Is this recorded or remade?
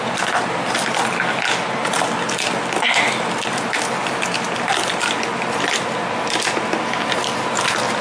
recorded